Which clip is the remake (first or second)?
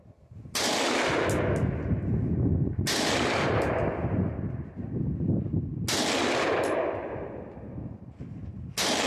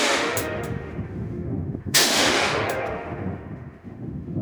second